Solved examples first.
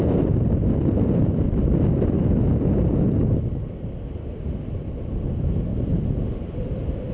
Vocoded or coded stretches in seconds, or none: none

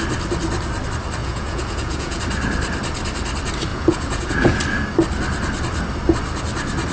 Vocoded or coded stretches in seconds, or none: 1.2-2.2 (vocoder, Vocos); 3.7-4.6

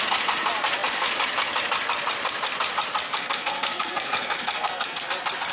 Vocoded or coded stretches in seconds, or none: 3.0-5.0 (codec, SNAC)

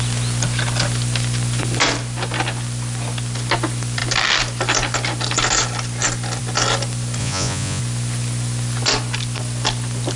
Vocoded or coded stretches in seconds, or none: 7.2-7.8 (vocoder, Vocos)

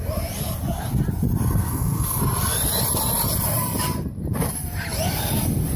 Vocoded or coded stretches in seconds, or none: 1.6-2.2 (codec, SNAC)

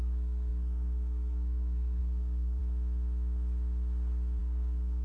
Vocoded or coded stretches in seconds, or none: 0.0-2.6 (codec, SNAC); 4.4-5.0

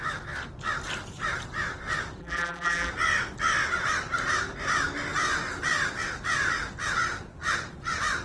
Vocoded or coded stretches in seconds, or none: 2.2-2.9 (vocoder, BigVGAN v2)